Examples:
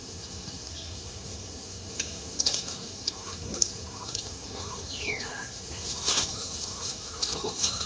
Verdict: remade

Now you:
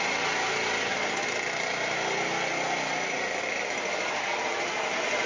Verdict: recorded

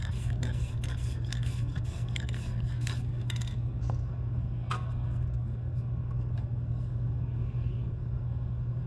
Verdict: remade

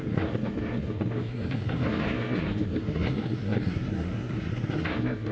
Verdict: remade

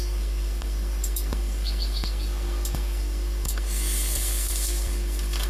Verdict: remade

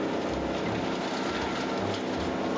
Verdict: recorded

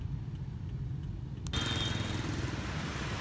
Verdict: recorded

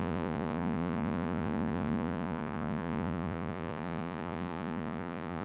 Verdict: remade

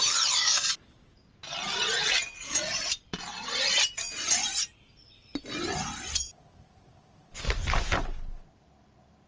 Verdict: recorded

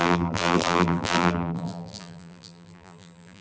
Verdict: remade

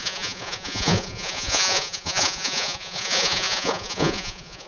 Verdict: remade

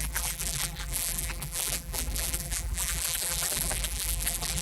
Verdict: remade